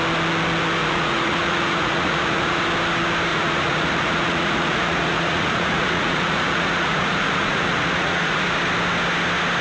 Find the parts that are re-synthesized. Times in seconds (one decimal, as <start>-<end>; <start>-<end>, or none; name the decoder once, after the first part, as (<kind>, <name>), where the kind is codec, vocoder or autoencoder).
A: 0.8-2.6 (vocoder, Vocos); 3.3-8.6

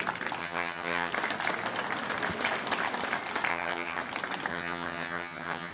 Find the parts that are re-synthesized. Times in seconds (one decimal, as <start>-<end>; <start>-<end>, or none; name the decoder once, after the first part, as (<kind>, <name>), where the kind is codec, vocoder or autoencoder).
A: 0.4-1.1 (vocoder, HiFi-GAN); 3.5-4.0; 4.5-5.7

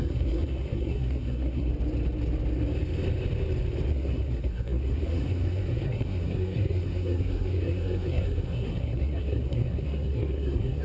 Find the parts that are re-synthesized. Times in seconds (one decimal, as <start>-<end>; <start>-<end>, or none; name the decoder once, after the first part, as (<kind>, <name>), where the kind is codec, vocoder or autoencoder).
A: 0.0-1.7 (codec, SNAC); 3.9-10.8

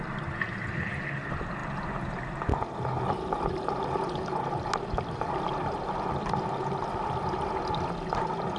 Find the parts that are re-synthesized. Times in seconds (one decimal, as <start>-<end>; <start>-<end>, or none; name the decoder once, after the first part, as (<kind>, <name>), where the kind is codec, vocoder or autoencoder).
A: none

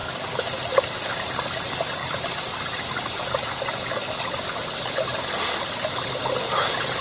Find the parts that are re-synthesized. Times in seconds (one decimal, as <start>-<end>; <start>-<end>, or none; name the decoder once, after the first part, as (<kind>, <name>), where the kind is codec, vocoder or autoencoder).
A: none

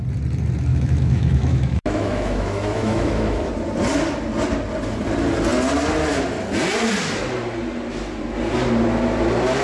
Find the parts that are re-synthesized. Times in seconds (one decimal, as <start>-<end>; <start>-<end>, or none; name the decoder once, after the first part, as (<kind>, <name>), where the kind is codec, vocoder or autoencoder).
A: 0.7-3.5 (autoencoder, DAC-VAE)